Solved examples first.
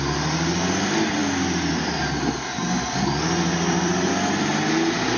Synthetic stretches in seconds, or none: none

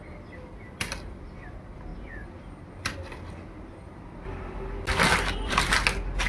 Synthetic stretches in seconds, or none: 5.1-5.6 (vocoder, BigVGAN v2)